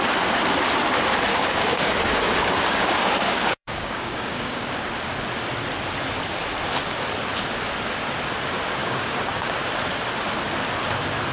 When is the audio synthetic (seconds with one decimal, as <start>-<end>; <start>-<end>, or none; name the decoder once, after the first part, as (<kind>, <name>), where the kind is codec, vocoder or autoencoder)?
1.3-4.7 (codec, DAC); 8.8-9.5